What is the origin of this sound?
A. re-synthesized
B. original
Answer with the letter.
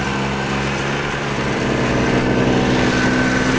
B